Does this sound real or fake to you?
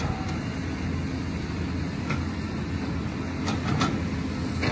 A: real